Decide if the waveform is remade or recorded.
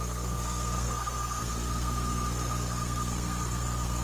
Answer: remade